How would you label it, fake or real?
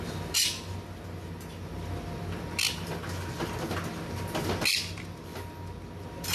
real